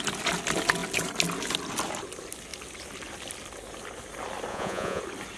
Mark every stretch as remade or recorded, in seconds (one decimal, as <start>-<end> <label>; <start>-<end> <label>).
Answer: 0.0-4.5 recorded; 4.5-5.0 remade; 5.0-5.4 recorded